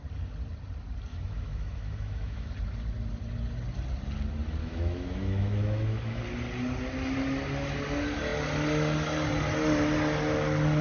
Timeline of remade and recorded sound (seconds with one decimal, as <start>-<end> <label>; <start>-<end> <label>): 0.0-1.1 recorded; 1.1-2.5 remade; 2.5-4.6 recorded; 4.6-6.2 remade; 6.2-10.8 recorded